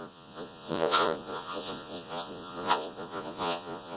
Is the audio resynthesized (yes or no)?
yes